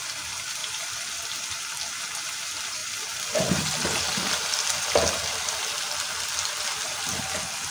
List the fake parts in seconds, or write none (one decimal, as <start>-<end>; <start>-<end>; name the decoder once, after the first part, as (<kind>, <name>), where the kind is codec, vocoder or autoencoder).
none